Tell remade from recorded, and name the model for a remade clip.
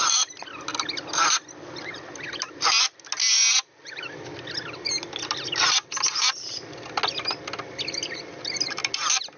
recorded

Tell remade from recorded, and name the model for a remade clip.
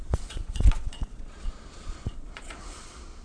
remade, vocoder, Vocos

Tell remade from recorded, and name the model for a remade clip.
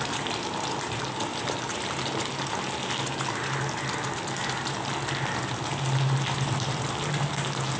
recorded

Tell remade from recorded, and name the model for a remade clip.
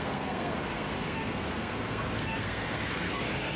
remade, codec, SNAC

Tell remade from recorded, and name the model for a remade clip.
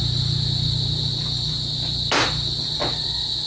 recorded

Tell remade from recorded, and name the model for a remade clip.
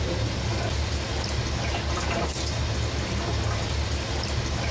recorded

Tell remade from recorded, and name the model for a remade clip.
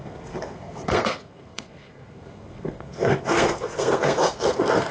remade, codec, SNAC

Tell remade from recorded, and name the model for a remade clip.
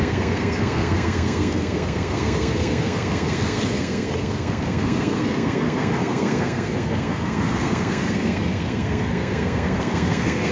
remade, codec, SNAC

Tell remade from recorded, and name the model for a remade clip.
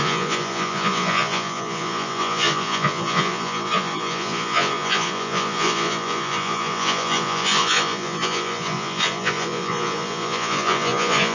remade, vocoder, Vocos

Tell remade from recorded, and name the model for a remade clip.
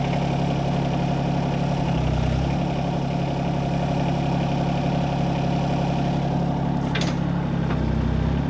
recorded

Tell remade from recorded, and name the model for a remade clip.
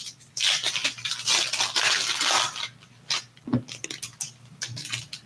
recorded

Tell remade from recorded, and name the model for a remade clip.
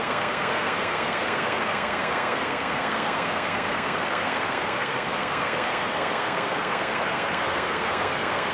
remade, codec, SNAC